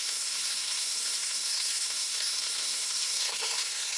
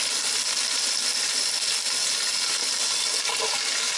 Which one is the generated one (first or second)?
first